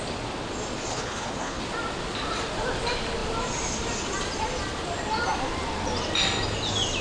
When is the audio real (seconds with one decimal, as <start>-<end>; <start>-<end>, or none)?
0.0-0.9; 1.6-7.0